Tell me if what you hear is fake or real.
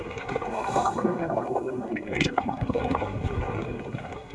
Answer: fake